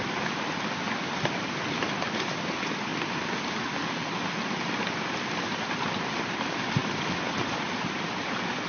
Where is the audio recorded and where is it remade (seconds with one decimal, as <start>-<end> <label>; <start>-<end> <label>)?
0.0-8.7 recorded

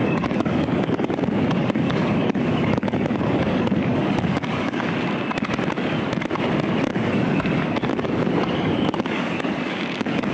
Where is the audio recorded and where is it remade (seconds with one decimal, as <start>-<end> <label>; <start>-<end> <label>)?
0.0-1.2 remade; 1.2-1.6 recorded; 1.6-4.9 remade; 4.9-6.9 recorded; 6.9-10.3 remade

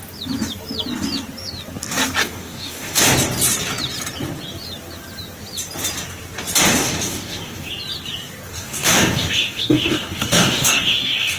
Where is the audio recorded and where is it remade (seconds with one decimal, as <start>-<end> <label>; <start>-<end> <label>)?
0.0-2.2 recorded; 2.2-3.0 remade; 3.0-6.8 recorded; 6.8-7.7 remade; 7.7-8.5 recorded; 8.5-11.4 remade

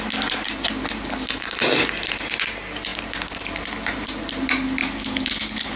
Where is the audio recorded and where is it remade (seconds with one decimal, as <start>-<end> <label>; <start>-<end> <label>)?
0.0-4.8 recorded; 4.8-5.8 remade

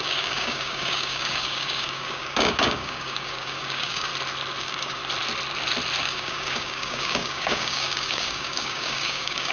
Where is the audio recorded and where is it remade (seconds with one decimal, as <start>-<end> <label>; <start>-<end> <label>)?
0.0-4.1 remade; 4.1-4.6 recorded; 4.6-5.0 remade; 5.0-6.0 recorded; 6.0-9.5 remade

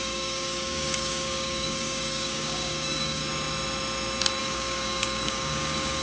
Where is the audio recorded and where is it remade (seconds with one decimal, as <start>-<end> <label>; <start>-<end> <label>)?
0.0-3.2 remade; 3.2-4.4 recorded; 4.4-6.0 remade

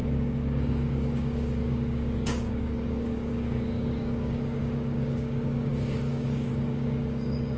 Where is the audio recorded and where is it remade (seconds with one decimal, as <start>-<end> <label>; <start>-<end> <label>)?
0.0-7.6 remade